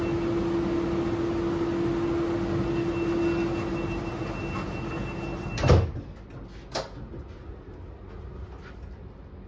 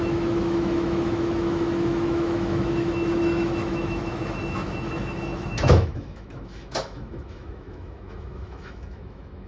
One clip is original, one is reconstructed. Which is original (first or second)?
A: first